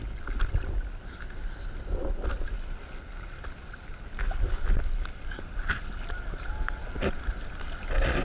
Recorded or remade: recorded